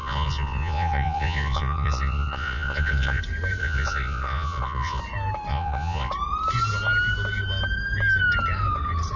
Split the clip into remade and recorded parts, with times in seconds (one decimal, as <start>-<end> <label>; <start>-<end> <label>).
0.0-3.2 remade; 3.2-3.6 recorded; 3.6-5.0 remade; 5.0-5.5 recorded; 5.5-6.1 remade; 6.1-9.2 recorded